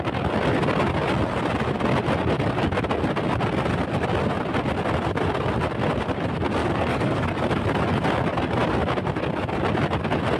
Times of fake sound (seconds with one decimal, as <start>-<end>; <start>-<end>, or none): 6.6-7.3